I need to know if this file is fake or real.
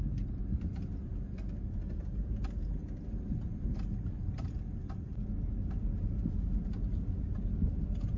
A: real